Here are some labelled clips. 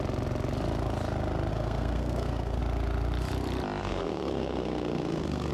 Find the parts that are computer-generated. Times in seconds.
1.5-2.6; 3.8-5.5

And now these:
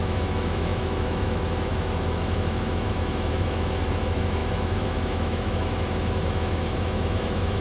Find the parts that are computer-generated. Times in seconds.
0.0-7.6

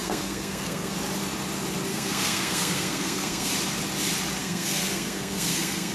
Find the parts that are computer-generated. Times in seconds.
0.0-0.9; 1.9-3.5; 4.4-5.9

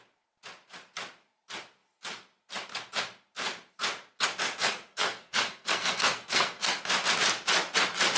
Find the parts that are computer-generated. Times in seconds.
4.6-6.8

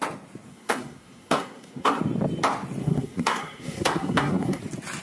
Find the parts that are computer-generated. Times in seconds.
0.5-2.0; 2.8-4.6

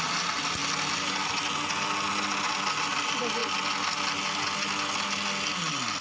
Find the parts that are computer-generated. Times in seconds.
none

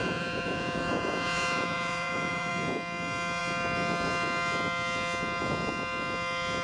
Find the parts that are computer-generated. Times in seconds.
0.0-2.5